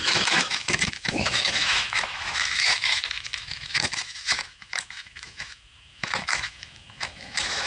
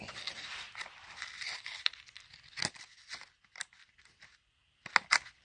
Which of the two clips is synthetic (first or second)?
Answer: first